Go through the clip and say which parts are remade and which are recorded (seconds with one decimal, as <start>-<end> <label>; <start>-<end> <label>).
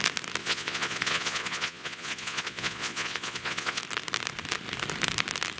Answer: 0.0-0.4 recorded; 0.4-3.8 remade; 3.8-5.6 recorded